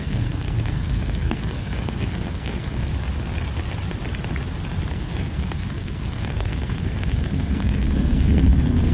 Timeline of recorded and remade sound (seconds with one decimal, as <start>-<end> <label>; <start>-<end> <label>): 0.0-2.9 remade; 2.9-4.9 recorded; 4.9-8.9 remade